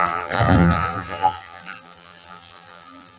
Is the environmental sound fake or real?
fake